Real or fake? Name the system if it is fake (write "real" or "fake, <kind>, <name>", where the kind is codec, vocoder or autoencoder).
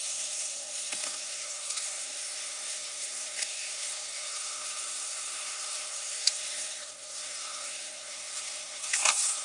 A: fake, codec, SNAC